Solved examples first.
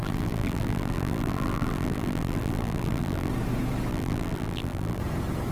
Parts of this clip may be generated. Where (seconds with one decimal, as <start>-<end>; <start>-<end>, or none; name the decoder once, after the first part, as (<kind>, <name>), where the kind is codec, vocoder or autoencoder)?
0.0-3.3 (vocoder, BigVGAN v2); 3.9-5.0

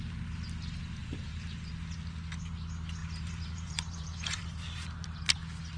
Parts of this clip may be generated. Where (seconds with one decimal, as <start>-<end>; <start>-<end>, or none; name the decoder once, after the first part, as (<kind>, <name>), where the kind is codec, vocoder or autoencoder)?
1.0-1.7 (vocoder, BigVGAN v2); 3.0-4.4

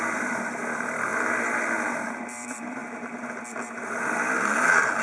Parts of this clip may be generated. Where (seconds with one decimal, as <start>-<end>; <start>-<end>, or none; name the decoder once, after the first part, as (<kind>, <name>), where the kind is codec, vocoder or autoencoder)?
0.0-2.8 (vocoder, BigVGAN v2); 3.5-5.0

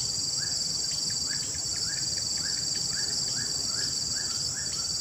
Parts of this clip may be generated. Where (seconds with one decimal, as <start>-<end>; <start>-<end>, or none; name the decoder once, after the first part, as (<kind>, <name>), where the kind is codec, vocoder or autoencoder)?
0.0-5.0 (vocoder, BigVGAN v2)

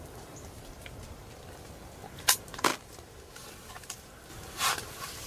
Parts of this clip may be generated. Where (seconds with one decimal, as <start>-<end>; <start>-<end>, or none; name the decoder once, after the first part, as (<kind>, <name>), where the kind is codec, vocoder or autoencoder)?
0.0-5.3 (vocoder, BigVGAN v2)